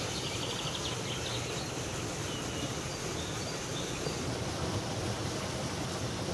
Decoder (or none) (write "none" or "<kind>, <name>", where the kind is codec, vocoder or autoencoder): vocoder, BigVGAN v2